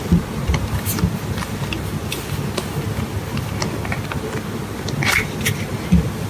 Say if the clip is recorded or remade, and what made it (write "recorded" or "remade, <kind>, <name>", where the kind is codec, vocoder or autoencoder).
recorded